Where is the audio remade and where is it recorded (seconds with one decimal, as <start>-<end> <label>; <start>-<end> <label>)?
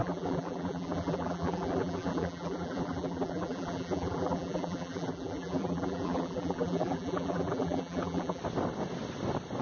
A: 0.0-8.4 remade; 8.4-9.6 recorded